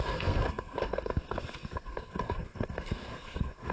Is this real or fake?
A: fake